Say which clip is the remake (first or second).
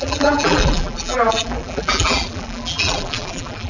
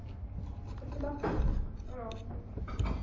first